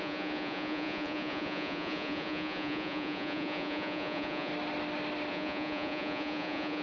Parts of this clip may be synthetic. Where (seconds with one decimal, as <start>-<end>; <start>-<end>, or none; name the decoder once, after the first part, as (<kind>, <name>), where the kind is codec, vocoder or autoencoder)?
0.0-4.5 (vocoder, Vocos); 5.3-6.8